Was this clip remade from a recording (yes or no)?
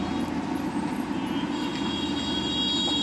no